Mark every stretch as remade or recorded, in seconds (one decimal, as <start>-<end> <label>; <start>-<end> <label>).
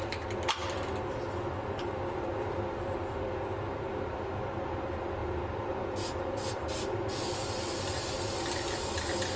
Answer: 0.0-9.4 recorded